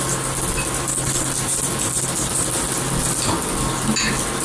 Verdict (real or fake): real